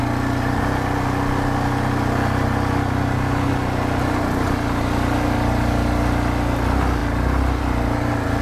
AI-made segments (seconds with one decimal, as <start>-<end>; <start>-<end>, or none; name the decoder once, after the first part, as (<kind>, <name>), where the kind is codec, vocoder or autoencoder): none